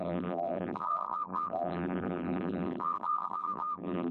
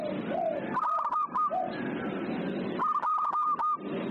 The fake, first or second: first